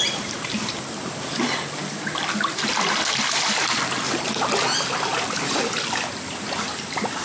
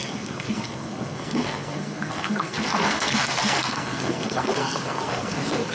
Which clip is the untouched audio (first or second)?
first